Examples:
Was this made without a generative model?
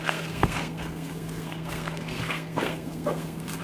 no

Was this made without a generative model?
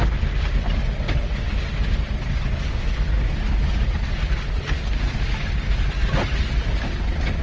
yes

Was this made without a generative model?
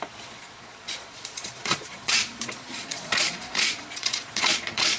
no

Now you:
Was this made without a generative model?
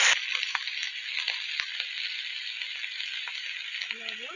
yes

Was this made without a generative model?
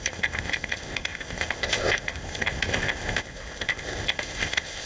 no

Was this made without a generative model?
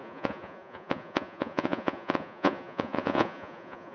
no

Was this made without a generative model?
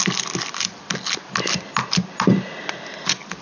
yes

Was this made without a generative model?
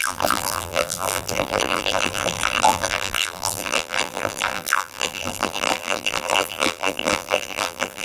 no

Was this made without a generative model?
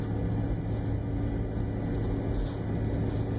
yes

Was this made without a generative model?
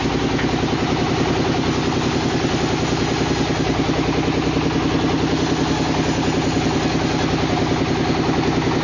yes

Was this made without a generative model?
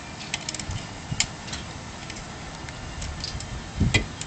yes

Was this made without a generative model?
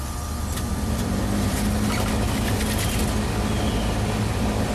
yes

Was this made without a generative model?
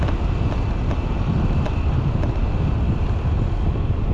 yes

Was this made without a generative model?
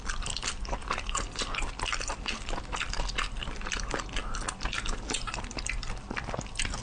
yes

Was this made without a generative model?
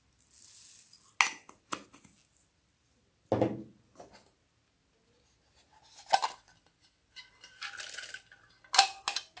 yes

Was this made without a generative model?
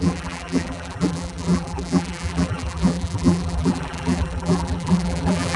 no